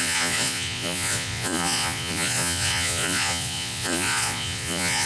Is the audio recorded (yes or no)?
no